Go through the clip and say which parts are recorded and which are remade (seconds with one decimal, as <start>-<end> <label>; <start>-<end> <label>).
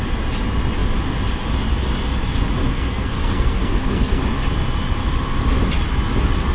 0.0-2.7 recorded; 2.7-4.2 remade; 4.2-6.5 recorded